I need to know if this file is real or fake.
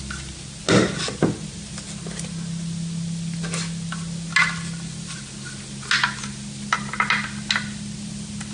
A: real